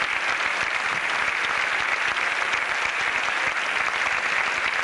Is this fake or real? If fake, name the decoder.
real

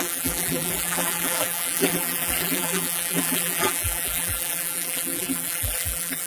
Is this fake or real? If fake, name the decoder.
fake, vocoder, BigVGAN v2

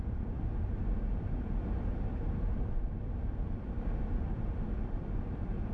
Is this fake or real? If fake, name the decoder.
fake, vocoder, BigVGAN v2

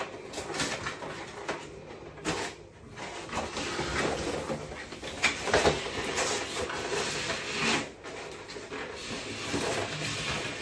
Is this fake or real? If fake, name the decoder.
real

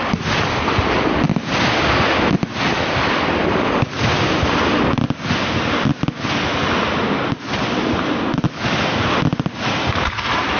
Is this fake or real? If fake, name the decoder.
real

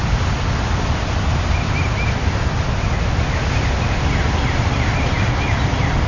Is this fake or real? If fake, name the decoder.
real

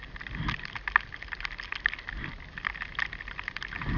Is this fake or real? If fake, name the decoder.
real